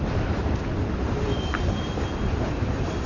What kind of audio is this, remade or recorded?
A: recorded